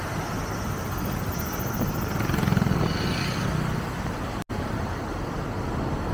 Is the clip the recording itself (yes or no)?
yes